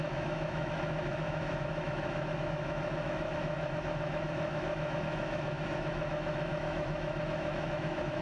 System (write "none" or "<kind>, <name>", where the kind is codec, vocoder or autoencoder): autoencoder, DAC-VAE